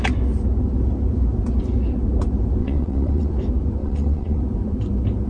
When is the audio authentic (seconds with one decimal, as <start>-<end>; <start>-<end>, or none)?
0.0-2.6; 3.3-3.8; 4.4-5.3